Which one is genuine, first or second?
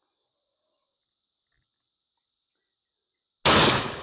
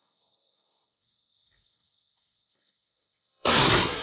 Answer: first